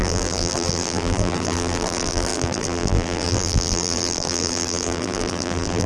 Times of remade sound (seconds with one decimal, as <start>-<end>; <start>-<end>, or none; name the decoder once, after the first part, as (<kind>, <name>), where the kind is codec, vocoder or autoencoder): 0.0-5.9 (vocoder, BigVGAN v2)